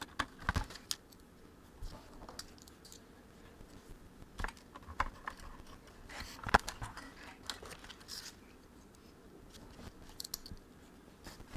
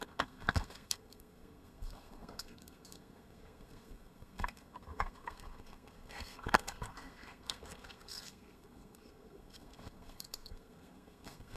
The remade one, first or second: second